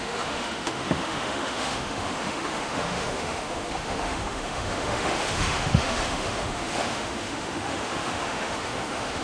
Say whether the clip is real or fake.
fake